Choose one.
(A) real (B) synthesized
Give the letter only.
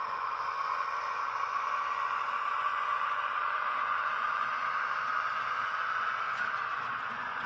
B